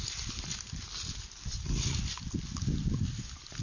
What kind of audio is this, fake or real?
real